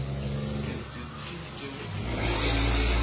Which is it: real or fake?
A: real